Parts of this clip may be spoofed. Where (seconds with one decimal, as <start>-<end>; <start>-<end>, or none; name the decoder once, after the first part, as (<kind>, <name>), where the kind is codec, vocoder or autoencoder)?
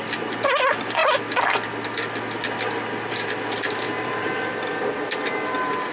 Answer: none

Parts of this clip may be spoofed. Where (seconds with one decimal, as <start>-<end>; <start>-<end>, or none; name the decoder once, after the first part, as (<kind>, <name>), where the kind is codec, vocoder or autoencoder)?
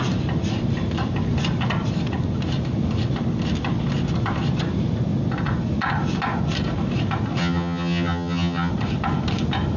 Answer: 7.4-8.7 (vocoder, HiFi-GAN)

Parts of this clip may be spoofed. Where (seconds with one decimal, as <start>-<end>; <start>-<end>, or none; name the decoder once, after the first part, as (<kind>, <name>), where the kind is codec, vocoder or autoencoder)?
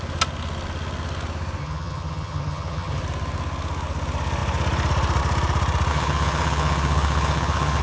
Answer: 1.6-3.0 (vocoder, HiFi-GAN); 5.9-7.8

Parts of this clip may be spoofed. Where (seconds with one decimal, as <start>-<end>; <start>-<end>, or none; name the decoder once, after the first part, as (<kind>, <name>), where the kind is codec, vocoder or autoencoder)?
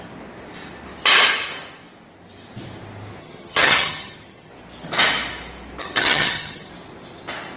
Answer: 3.2-4.5 (vocoder, HiFi-GAN); 5.8-6.7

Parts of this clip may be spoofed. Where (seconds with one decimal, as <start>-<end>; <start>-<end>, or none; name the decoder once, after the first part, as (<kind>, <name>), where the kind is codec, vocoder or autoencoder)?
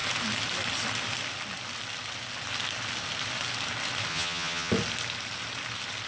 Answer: 4.1-4.7 (vocoder, HiFi-GAN)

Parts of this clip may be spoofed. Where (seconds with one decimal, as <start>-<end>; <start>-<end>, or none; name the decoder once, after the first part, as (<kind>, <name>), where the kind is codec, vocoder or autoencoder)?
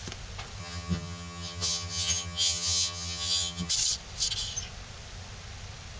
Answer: 0.6-3.7 (vocoder, HiFi-GAN)